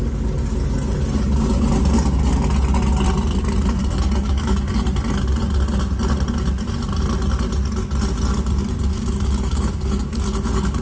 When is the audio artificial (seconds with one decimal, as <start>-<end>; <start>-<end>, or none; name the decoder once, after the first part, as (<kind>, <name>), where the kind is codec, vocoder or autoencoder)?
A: 3.8-4.6 (codec, DAC); 8.9-10.8